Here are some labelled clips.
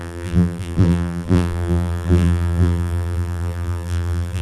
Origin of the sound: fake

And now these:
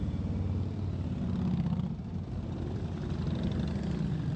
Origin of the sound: real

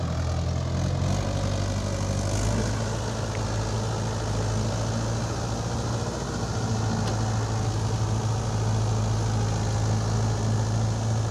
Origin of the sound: real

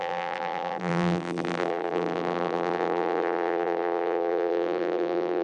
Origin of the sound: fake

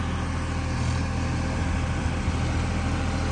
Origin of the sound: real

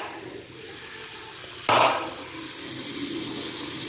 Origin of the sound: real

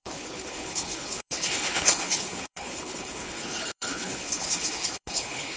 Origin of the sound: fake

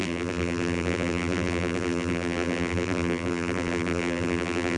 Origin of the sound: fake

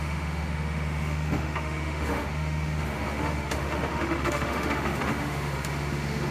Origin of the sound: fake